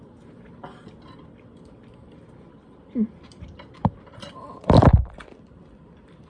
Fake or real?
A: fake